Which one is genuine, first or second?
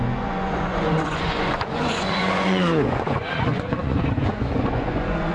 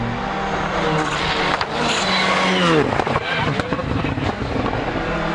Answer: second